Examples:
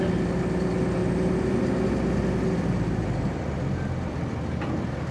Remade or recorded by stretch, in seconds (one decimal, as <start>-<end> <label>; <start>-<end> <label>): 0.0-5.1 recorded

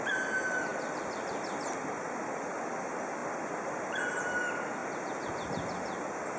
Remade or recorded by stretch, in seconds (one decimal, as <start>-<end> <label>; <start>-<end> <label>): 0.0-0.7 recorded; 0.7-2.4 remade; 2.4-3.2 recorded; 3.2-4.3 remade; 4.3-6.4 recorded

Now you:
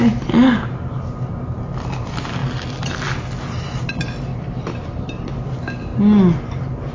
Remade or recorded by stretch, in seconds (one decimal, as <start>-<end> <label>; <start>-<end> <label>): 0.0-4.3 recorded; 4.3-5.3 remade; 5.3-6.9 recorded

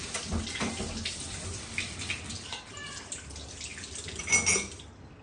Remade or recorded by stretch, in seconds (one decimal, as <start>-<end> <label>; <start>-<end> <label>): 0.0-3.1 remade; 3.1-5.2 recorded